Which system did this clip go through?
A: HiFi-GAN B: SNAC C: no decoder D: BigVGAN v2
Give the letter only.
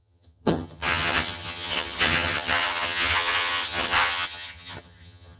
A